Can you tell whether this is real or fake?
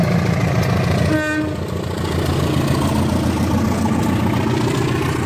real